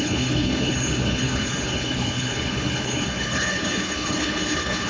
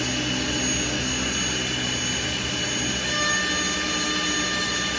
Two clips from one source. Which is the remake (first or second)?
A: first